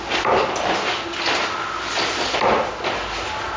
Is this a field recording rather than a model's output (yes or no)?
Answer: yes